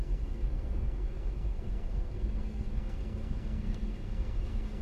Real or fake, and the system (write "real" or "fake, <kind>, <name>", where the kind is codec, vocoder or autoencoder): fake, codec, SNAC